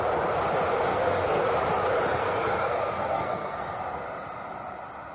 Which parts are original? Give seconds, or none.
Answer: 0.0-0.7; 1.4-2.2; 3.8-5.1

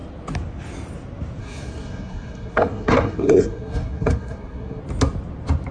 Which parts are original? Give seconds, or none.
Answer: 0.0-1.4; 4.8-5.7

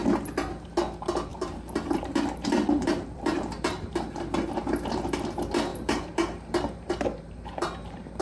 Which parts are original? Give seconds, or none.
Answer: 0.0-1.3; 5.2-5.7

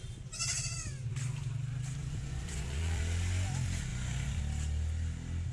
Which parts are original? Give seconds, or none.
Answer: 0.0-2.0; 3.0-3.9; 4.4-5.5

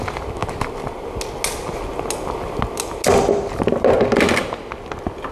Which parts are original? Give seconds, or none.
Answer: 0.0-5.3

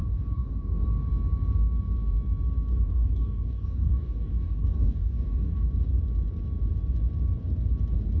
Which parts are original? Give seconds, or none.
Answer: 0.9-2.7; 5.7-8.2

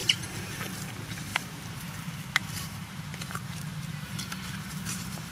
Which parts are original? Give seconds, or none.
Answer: 0.6-1.3; 1.8-2.4

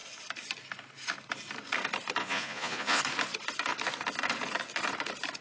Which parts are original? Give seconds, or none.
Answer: 0.0-2.2; 3.0-5.4